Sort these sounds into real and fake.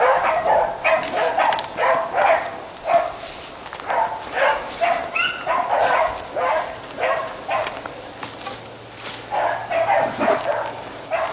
real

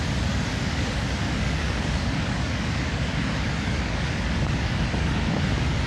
fake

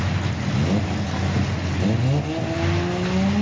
real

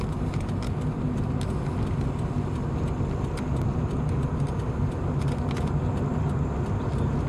real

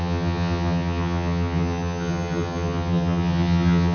fake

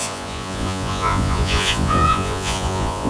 fake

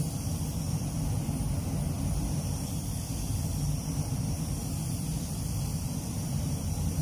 fake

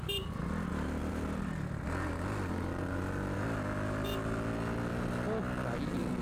real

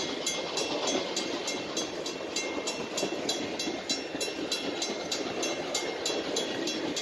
real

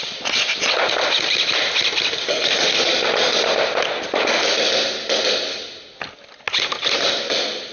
real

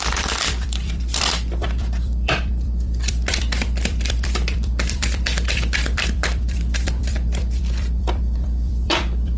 fake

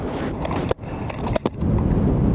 real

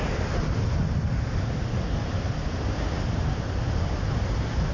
real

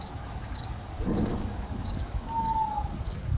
fake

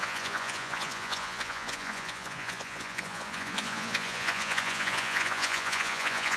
fake